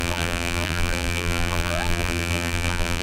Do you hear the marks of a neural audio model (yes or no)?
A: yes